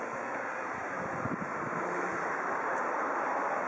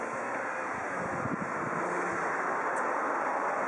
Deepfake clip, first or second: first